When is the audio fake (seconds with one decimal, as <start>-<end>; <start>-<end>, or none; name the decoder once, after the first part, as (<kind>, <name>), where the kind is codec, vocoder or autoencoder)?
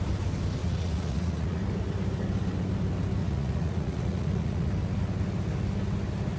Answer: 0.6-1.6 (vocoder, Vocos); 3.2-4.7